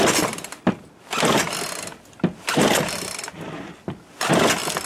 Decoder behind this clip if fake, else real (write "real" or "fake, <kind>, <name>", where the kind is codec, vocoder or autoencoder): real